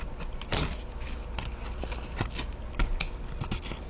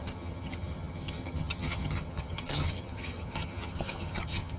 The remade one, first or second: second